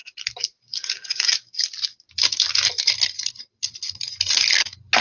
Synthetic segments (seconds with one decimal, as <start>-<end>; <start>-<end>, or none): none